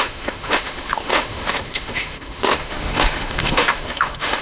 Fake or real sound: fake